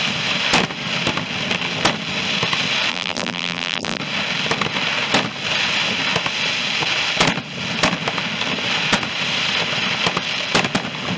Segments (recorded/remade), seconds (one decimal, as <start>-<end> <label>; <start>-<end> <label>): 0.0-2.9 recorded; 2.9-4.0 remade; 4.0-11.2 recorded